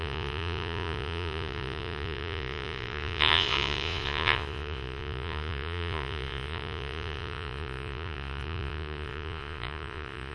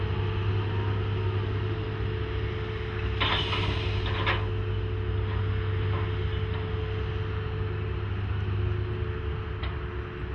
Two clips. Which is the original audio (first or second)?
second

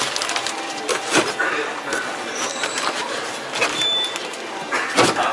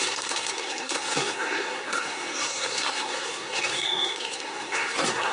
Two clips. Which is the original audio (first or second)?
first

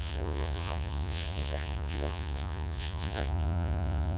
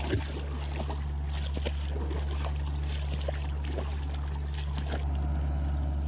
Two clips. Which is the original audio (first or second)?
second